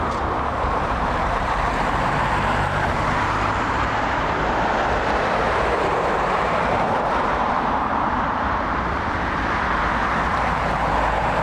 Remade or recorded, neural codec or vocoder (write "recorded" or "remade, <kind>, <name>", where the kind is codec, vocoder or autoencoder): remade, vocoder, BigVGAN v2